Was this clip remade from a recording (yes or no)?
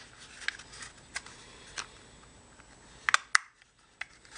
no